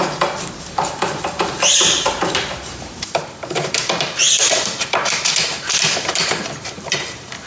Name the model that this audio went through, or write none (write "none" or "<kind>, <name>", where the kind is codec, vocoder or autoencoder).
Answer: vocoder, BigVGAN v2